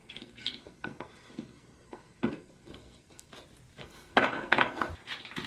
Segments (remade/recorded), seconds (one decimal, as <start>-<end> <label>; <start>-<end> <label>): 0.0-3.3 remade; 3.3-3.8 recorded; 3.8-4.9 remade; 4.9-5.5 recorded